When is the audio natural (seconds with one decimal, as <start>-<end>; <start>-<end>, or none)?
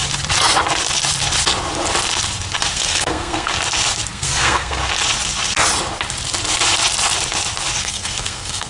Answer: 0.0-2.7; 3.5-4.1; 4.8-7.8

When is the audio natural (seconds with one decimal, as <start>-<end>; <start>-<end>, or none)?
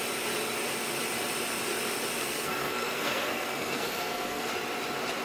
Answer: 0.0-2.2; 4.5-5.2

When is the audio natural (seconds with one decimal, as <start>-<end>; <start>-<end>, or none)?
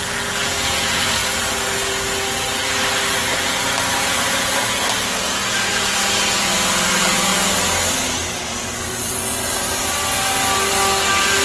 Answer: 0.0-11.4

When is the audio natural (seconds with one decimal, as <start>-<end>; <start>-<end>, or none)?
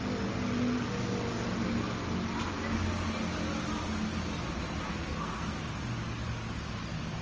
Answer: 0.0-4.9; 5.6-7.2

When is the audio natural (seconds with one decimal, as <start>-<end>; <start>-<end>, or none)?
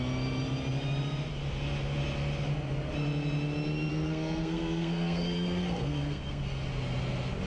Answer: 0.0-3.9; 6.4-7.5